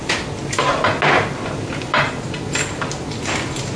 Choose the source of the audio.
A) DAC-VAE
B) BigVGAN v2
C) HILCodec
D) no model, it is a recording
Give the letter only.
D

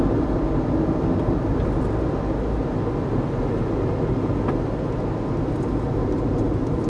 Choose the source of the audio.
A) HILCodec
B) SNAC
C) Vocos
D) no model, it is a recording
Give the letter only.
D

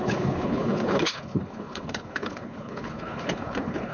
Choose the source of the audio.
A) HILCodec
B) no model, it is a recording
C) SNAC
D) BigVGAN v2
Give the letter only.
A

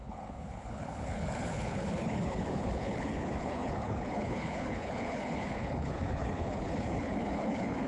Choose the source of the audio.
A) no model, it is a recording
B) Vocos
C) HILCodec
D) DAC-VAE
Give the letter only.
C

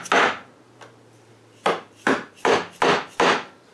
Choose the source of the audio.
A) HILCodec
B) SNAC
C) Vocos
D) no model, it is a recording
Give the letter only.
D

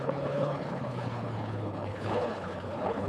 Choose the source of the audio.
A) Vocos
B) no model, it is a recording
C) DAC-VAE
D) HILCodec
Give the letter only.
D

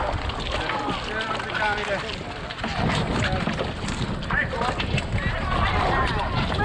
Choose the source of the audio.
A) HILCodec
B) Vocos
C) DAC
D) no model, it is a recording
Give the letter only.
D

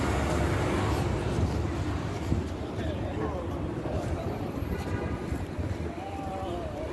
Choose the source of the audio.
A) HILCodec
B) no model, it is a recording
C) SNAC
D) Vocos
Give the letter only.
B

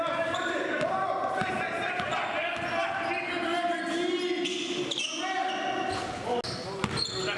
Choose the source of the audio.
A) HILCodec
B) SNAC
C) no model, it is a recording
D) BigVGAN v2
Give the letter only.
C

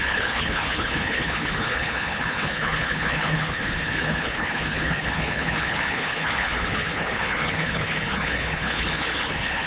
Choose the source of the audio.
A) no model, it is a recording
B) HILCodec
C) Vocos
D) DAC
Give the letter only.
B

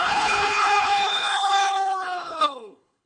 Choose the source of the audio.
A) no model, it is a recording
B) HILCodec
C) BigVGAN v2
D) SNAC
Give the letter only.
B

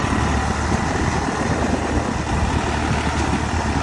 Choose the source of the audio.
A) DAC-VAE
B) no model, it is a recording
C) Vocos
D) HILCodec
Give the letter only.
B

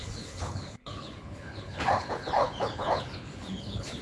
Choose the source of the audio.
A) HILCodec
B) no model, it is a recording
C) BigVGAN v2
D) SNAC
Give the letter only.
A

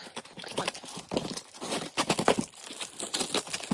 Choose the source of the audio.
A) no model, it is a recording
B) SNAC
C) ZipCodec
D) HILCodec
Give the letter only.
A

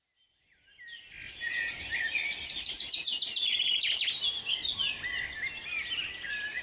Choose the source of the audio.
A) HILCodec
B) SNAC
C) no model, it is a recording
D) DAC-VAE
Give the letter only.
C